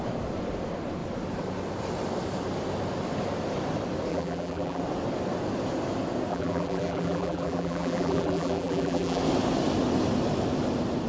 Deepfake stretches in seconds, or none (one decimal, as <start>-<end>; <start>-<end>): 4.1-4.8; 6.3-9.2